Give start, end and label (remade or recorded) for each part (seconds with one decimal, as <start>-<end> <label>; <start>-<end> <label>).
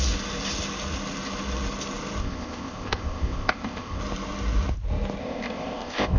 0.0-2.2 recorded; 2.2-4.0 remade; 4.0-5.2 recorded; 5.2-6.2 remade